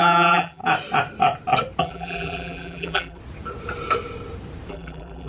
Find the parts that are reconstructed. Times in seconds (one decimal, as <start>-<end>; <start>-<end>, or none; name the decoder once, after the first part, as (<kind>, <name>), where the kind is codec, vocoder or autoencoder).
0.0-0.6 (vocoder, BigVGAN v2); 1.8-3.2; 4.7-5.3